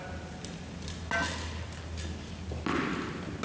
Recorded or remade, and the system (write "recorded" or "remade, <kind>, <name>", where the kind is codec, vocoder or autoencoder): recorded